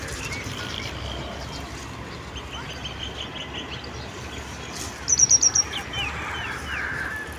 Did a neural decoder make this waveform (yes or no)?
no